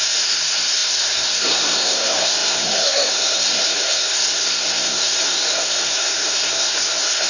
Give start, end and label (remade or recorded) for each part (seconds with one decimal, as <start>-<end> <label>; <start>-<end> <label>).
0.0-7.3 remade